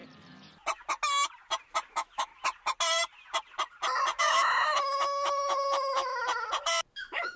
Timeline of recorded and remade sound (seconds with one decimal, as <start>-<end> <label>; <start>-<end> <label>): 0.0-1.9 recorded; 1.9-2.3 remade; 2.3-4.2 recorded; 4.2-6.1 remade; 6.1-6.9 recorded; 6.9-7.4 remade